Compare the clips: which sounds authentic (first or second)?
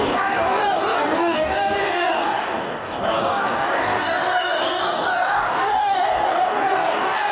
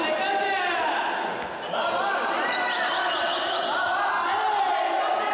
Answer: second